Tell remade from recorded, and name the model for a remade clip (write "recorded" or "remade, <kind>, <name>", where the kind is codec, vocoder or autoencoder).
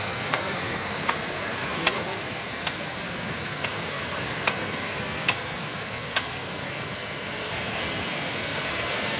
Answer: remade, codec, SNAC